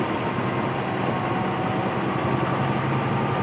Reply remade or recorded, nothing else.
recorded